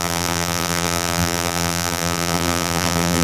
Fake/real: fake